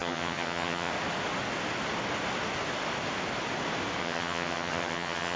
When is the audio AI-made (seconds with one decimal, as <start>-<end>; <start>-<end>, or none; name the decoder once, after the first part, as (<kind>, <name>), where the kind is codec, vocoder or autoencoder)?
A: 0.0-0.9 (vocoder, HiFi-GAN); 4.0-5.4